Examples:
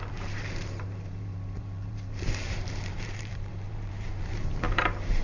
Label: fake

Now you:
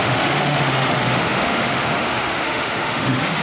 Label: fake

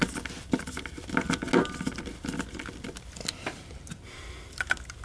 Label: real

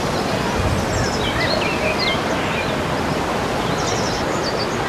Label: real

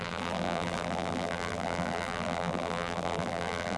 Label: fake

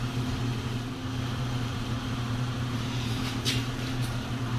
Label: fake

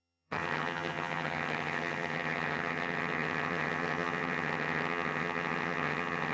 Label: fake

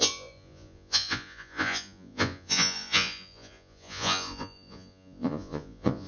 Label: fake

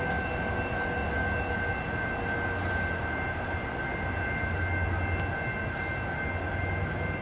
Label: real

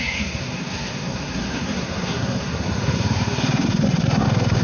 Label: fake